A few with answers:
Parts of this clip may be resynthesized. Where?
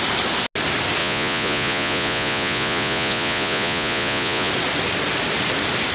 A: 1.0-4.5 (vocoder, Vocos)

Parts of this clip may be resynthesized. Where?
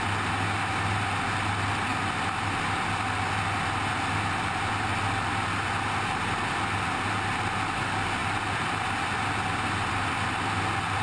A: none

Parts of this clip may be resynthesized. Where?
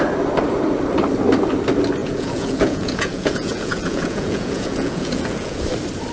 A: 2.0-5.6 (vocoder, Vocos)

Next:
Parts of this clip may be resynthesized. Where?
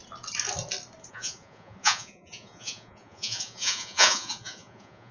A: 1.1-5.1 (vocoder, Vocos)